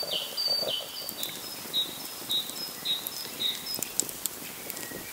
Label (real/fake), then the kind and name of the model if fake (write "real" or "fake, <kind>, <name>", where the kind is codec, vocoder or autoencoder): real